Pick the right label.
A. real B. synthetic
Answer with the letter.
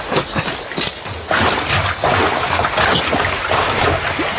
A